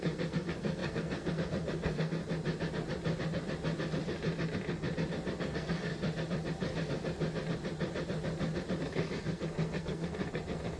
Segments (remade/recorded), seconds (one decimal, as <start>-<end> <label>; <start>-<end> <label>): 0.0-2.2 remade; 2.2-5.4 recorded; 5.4-5.9 remade; 5.9-8.8 recorded; 8.8-10.8 remade